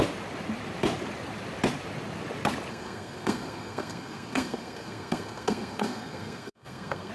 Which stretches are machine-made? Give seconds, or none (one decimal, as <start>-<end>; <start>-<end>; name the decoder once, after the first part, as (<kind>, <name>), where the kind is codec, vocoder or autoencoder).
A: 2.7-7.1 (codec, SNAC)